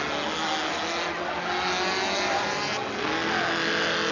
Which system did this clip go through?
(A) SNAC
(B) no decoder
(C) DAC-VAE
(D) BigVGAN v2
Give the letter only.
B